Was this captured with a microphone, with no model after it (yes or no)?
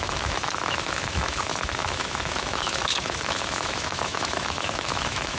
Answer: no